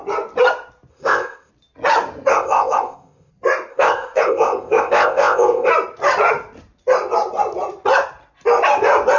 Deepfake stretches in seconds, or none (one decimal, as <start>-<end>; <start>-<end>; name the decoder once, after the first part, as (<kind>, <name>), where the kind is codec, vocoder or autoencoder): 0.9-1.5 (codec, ZipCodec); 2.3-3.3; 3.7-5.7